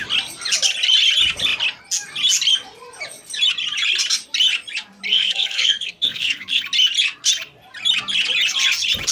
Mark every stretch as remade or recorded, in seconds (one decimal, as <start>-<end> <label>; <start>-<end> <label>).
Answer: 0.0-5.1 recorded; 5.1-6.6 remade; 6.6-9.1 recorded